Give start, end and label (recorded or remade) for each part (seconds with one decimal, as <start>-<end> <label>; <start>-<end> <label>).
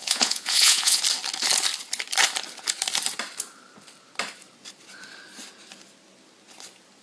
0.0-1.0 remade; 1.0-7.0 recorded